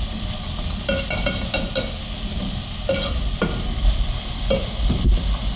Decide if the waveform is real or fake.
real